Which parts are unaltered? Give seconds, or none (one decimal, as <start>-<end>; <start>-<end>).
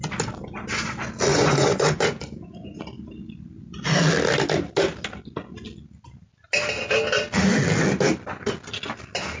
0.0-1.3; 2.8-9.4